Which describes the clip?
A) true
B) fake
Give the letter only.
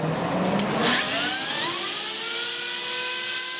A